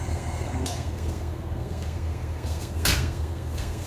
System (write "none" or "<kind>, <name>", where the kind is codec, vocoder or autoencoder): codec, SNAC